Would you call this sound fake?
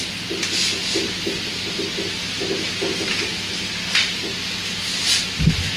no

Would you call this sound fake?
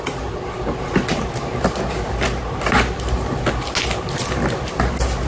no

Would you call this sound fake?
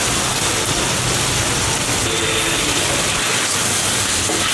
no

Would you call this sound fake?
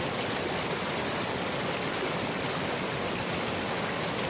no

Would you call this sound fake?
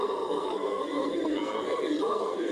yes